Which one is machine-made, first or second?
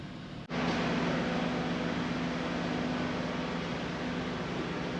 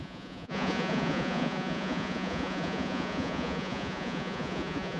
second